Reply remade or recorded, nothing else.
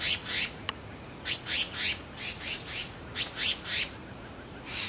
remade